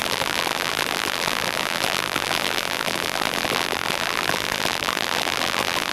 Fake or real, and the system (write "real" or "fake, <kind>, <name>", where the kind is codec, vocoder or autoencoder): fake, vocoder, BigVGAN v2